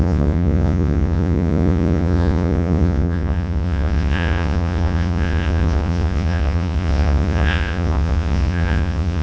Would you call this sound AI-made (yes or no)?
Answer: yes